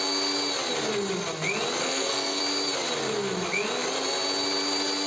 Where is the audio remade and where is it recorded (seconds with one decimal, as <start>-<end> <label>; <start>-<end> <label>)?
0.0-1.8 recorded; 1.8-2.4 remade; 2.4-5.1 recorded